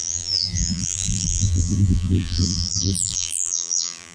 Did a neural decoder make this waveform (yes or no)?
yes